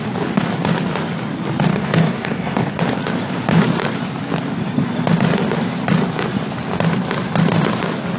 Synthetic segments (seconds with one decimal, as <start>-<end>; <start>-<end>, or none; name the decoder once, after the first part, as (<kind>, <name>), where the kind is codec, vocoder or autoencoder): 1.7-2.8 (codec, DAC)